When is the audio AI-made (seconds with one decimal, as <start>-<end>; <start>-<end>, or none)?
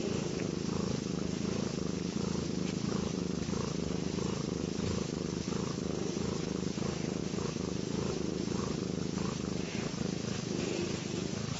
none